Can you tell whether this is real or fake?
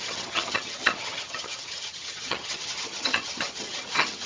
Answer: fake